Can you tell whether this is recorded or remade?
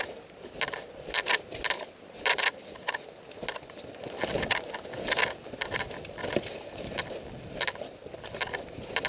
recorded